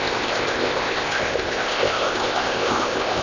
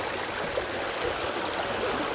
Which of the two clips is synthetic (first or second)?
first